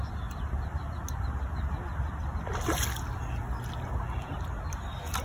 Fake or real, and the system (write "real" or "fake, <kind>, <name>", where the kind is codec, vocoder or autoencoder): real